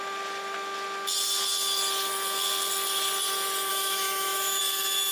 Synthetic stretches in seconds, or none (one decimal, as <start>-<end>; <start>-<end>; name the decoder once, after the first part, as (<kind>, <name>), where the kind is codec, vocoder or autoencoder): 3.7-4.6 (autoencoder, DAC-VAE)